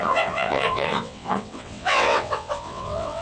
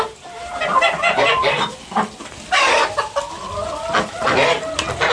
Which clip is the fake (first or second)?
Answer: first